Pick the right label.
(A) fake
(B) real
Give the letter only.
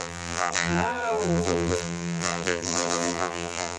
A